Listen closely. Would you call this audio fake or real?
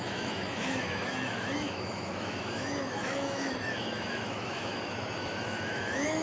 fake